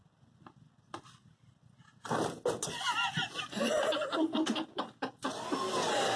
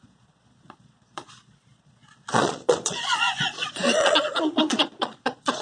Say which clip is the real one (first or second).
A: first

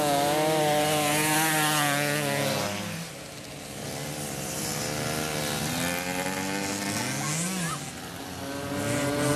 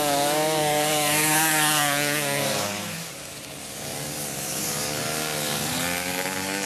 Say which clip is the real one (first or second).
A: first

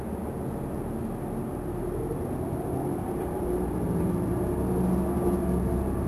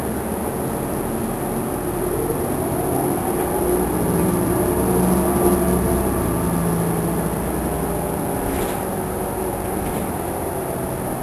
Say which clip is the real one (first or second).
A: second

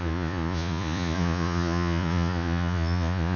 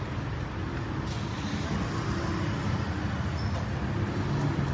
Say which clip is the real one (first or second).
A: second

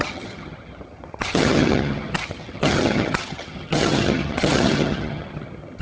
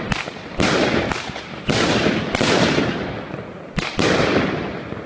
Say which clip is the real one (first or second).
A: second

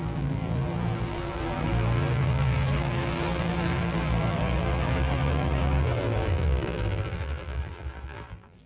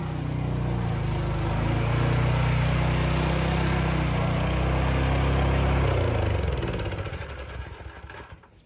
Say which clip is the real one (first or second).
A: second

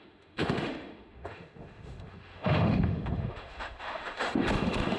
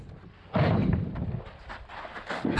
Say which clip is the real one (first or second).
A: second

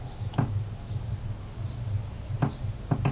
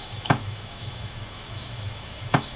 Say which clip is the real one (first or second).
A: first